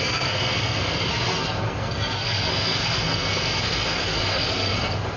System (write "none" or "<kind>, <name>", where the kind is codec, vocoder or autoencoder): codec, SNAC